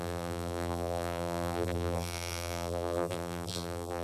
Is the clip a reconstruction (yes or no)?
yes